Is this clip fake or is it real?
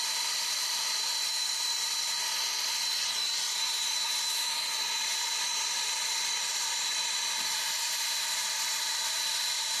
fake